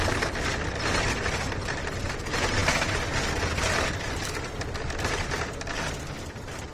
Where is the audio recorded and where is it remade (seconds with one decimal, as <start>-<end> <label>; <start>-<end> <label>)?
0.0-6.7 recorded